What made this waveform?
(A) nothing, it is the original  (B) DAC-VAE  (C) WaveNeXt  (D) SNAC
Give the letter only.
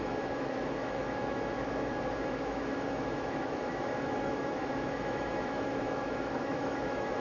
B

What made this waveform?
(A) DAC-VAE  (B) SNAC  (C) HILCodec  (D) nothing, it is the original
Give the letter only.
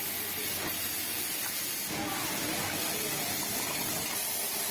D